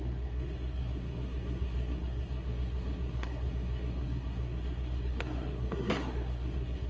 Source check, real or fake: fake